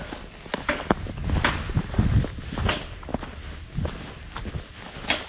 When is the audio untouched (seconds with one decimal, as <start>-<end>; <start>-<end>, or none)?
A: 0.0-5.3